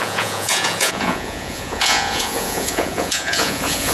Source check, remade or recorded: remade